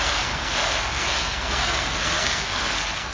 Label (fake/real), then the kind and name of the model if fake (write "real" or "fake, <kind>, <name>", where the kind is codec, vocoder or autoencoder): fake, codec, SNAC